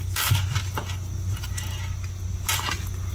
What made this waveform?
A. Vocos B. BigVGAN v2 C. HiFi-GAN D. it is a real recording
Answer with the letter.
D